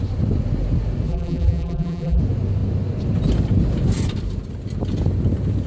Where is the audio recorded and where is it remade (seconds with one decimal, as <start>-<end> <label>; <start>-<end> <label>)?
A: 0.0-1.1 recorded; 1.1-2.2 remade; 2.2-5.7 recorded